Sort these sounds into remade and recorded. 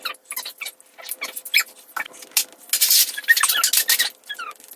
recorded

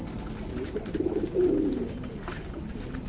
recorded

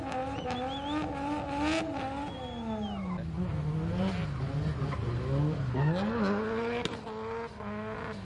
recorded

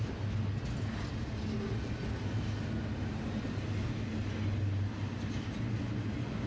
recorded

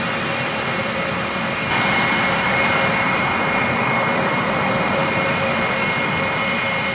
remade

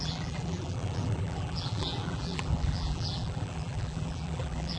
remade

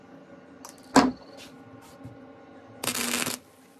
recorded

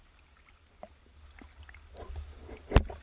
recorded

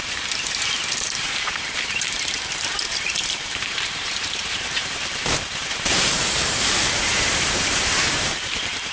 remade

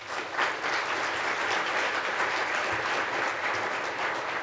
recorded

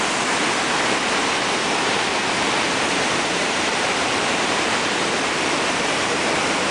remade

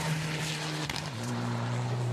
remade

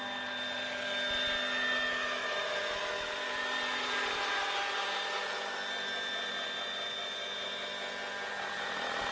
recorded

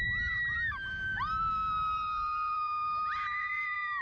remade